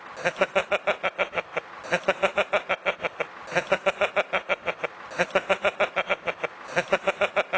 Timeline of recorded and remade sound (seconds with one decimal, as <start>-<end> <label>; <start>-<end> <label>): 0.0-7.6 recorded

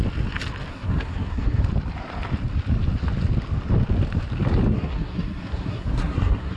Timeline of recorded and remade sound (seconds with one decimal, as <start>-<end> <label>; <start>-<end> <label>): 0.0-0.7 recorded; 0.7-1.6 remade; 1.6-4.7 recorded; 4.7-6.6 remade